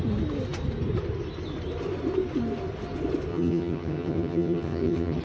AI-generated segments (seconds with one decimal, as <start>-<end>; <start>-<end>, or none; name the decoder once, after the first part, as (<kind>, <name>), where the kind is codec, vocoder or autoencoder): 3.3-5.2 (vocoder, HiFi-GAN)